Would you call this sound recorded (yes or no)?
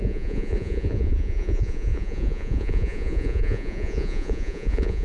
no